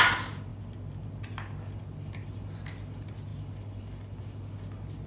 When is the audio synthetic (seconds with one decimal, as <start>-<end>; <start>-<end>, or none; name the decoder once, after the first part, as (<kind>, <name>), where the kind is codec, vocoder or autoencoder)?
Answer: none